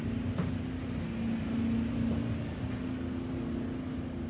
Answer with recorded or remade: recorded